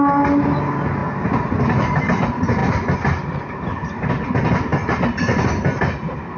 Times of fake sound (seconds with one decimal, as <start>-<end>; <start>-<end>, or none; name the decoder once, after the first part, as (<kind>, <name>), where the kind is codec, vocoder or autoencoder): 1.0-2.0 (vocoder, BigVGAN v2); 4.7-5.2